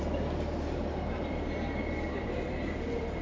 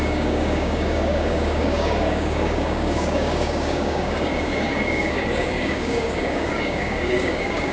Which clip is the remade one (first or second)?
second